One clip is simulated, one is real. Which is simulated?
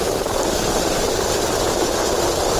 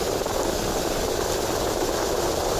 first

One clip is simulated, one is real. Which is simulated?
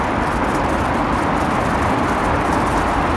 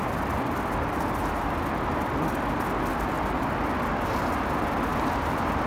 first